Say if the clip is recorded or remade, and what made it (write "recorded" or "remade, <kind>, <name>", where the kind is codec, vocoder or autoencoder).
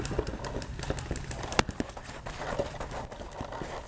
recorded